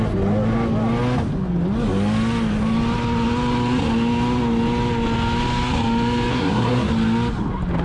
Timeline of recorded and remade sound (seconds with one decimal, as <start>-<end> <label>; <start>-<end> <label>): 0.0-6.3 recorded; 6.3-6.9 remade; 6.9-7.8 recorded